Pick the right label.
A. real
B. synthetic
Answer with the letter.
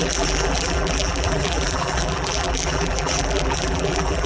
B